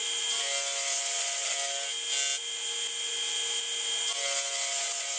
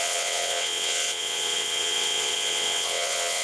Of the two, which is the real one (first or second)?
first